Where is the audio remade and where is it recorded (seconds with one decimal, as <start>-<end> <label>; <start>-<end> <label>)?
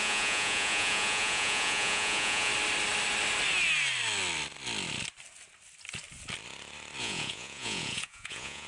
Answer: 0.0-2.5 remade; 2.5-7.0 recorded; 7.0-8.7 remade